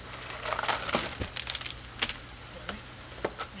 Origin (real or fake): real